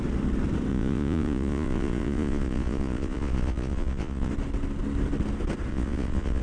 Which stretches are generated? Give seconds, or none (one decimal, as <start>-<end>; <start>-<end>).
0.7-4.3; 5.7-6.4